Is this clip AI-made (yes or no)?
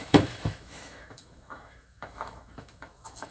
yes